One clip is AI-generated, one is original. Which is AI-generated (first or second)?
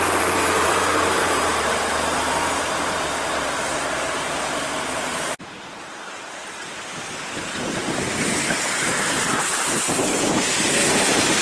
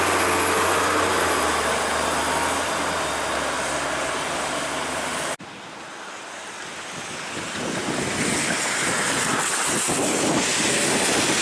first